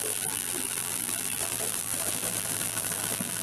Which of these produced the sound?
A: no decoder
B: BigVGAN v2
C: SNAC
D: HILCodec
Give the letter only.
B